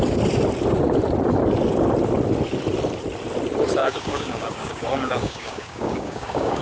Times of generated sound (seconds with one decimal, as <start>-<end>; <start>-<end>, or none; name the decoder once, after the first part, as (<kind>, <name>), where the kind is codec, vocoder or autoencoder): 3.8-6.6 (codec, DAC)